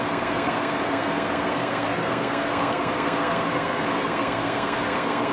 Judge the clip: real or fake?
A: fake